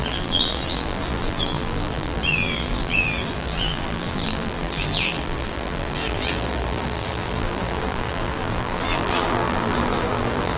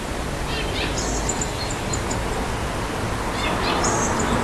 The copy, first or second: first